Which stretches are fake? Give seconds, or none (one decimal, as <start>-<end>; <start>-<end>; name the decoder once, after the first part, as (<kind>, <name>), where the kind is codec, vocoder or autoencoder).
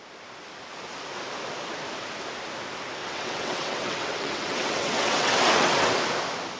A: 3.0-6.0 (vocoder, WaveNeXt)